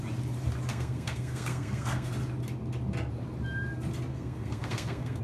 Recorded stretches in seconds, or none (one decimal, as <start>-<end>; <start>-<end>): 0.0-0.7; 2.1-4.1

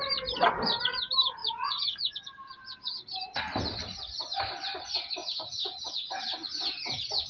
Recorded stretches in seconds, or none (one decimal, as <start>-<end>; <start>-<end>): 0.0-1.4; 3.4-5.2; 6.2-7.3

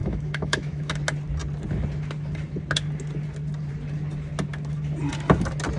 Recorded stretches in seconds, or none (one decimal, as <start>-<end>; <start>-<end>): 0.9-5.8

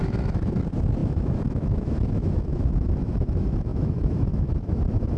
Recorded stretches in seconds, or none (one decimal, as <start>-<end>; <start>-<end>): none